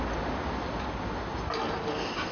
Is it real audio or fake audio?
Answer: real